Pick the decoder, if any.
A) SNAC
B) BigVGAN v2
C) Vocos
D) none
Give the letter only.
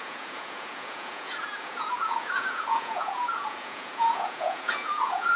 C